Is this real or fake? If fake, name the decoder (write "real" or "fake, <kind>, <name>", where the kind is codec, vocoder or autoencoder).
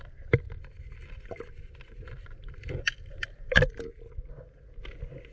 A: real